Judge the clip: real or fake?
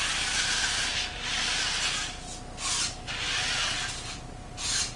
real